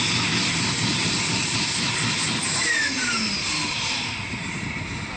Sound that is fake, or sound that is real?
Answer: real